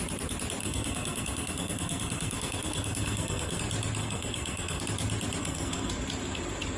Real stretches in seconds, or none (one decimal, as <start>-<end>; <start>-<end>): 0.0-0.6; 3.6-4.0; 4.8-5.4; 5.9-6.8